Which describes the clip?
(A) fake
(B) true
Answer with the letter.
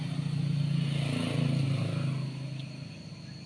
B